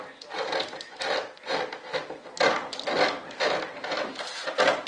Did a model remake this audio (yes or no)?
no